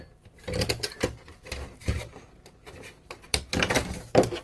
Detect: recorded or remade remade